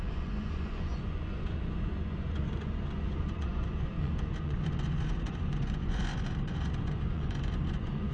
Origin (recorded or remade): remade